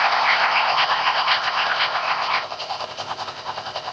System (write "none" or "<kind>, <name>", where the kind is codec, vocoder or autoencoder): codec, ZipCodec